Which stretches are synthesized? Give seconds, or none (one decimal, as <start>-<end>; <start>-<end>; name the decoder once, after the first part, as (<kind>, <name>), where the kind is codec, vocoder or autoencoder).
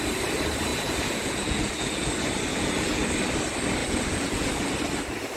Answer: 0.7-2.1 (vocoder, Vocos); 2.5-3.1; 3.8-4.6